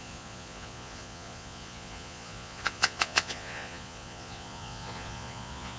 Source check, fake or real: fake